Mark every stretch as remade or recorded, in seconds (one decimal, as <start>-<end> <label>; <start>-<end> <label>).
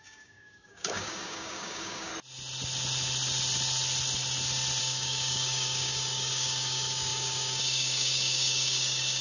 0.0-2.1 remade; 2.1-4.8 recorded; 4.8-9.2 remade